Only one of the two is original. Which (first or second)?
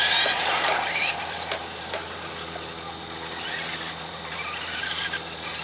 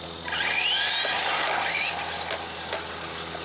second